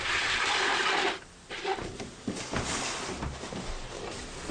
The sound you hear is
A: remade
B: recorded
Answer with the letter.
B